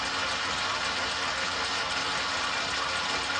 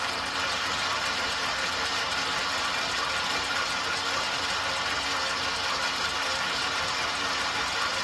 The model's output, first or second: second